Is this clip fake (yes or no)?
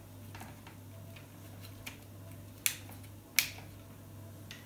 no